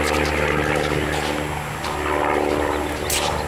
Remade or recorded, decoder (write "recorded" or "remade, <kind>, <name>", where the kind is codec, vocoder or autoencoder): recorded